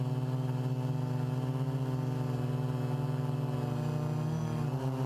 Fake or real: real